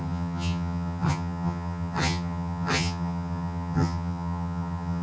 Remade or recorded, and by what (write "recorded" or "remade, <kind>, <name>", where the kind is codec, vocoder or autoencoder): remade, vocoder, HiFi-GAN